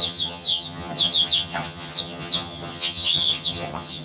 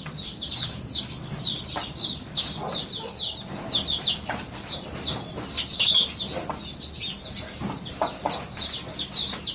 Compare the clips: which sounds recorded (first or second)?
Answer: second